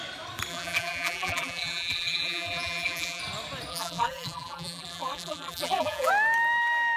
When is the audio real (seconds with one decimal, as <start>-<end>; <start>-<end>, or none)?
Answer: 0.0-0.5; 3.2-3.7; 6.1-7.0